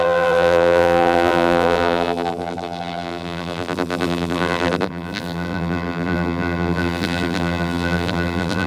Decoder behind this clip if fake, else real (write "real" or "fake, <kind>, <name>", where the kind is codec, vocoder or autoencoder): fake, vocoder, BigVGAN v2